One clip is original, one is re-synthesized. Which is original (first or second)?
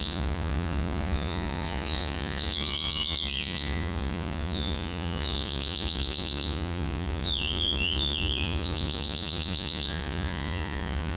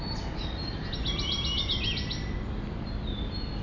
second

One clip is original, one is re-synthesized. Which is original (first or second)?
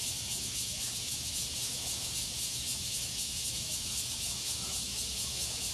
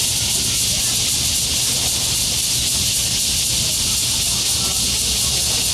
second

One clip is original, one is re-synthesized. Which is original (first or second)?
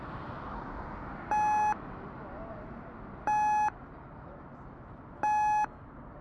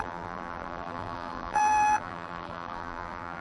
first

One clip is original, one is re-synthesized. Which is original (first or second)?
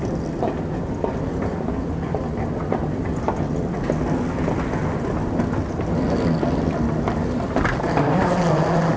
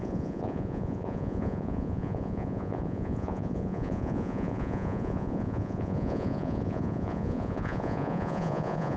first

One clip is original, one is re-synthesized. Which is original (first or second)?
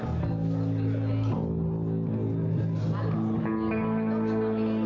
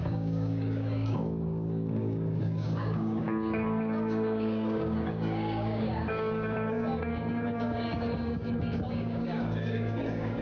first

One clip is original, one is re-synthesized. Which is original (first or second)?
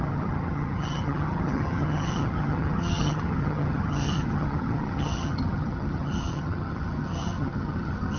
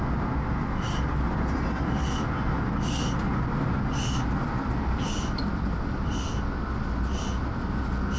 second